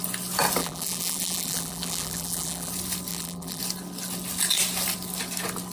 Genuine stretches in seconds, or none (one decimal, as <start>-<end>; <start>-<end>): 0.0-0.6; 2.7-3.1; 3.6-5.7